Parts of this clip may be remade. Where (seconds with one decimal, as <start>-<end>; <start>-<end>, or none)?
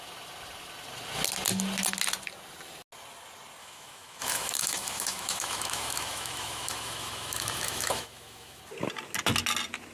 3.6-8.6